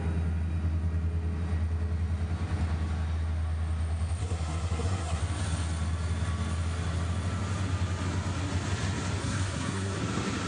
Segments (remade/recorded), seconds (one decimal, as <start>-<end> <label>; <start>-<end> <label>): 0.0-4.2 recorded; 4.2-5.2 remade; 5.2-9.2 recorded; 9.2-10.0 remade; 10.0-10.5 recorded